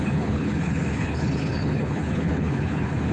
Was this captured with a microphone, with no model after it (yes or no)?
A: no